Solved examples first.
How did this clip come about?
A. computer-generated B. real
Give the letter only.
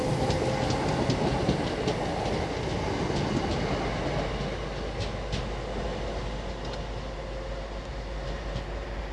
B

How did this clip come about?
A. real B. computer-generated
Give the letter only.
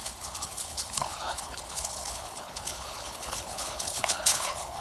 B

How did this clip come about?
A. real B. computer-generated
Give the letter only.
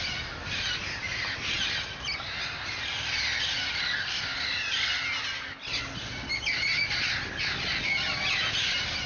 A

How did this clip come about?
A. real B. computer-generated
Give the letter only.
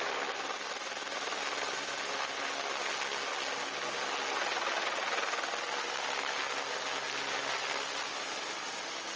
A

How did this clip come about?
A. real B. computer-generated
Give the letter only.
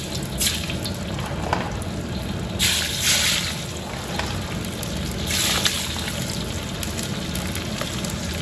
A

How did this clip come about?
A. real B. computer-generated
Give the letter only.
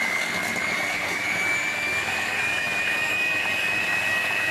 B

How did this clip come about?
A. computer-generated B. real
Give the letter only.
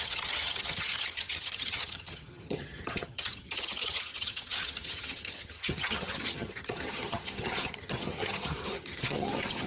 A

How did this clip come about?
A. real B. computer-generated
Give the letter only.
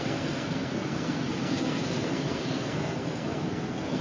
B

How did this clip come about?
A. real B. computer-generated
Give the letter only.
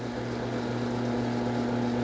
A